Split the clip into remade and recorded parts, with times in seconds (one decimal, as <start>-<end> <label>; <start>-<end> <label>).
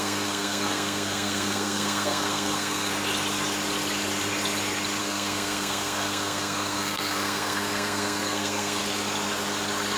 0.0-2.9 remade; 2.9-5.0 recorded; 5.0-8.8 remade; 8.8-10.0 recorded